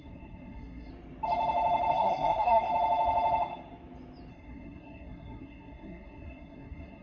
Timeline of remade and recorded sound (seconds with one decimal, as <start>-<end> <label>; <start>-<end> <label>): 0.0-0.9 remade; 0.9-1.9 recorded; 1.9-2.7 remade; 2.7-4.3 recorded; 4.3-7.0 remade